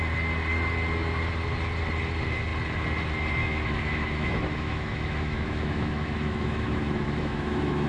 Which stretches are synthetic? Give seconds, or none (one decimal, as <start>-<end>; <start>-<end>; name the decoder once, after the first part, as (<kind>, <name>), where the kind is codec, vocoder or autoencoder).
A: 3.4-7.9 (autoencoder, DAC-VAE)